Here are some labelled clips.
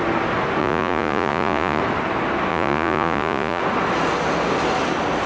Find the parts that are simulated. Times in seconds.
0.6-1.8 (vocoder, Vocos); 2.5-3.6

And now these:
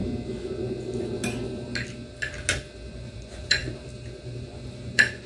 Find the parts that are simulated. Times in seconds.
2.9-3.6 (vocoder, Vocos); 4.4-5.3